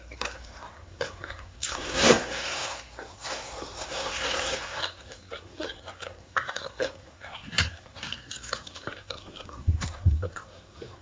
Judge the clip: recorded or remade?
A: remade